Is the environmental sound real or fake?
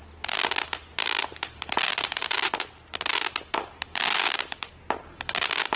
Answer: real